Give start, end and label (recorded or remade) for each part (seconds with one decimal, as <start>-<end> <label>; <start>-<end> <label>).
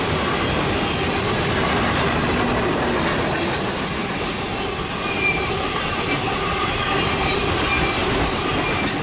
0.0-4.0 recorded; 4.0-5.5 remade; 5.5-9.0 recorded